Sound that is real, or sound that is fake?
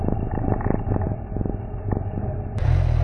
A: real